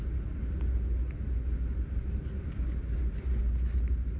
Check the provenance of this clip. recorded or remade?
recorded